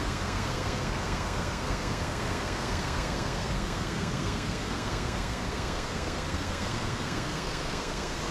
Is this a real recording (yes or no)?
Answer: no